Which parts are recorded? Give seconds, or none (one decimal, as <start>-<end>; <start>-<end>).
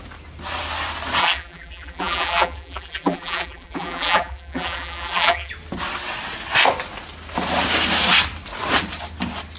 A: 0.0-1.2; 5.5-9.6